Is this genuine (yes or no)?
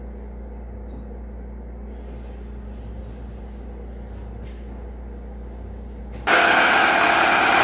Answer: yes